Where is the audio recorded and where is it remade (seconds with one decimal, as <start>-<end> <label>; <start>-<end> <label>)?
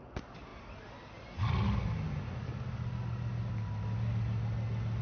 0.0-5.0 recorded